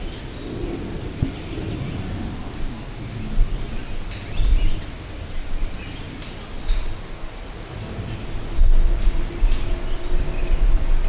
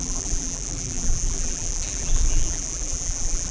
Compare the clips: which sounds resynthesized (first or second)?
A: second